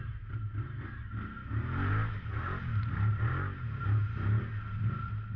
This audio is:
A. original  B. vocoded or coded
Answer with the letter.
A